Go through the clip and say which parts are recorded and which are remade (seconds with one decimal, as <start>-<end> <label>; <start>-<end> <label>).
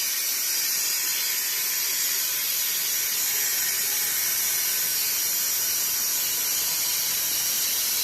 0.0-1.1 remade; 1.1-1.9 recorded; 1.9-4.5 remade; 4.5-6.8 recorded; 6.8-8.0 remade